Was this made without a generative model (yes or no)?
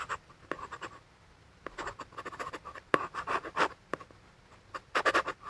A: yes